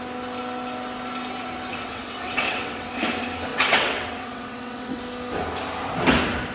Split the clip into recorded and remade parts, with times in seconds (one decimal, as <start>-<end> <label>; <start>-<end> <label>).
0.0-1.7 recorded; 1.7-2.9 remade; 2.9-3.5 recorded; 3.5-5.0 remade; 5.0-6.5 recorded